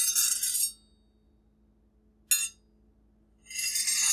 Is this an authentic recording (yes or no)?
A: yes